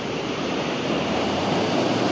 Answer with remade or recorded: remade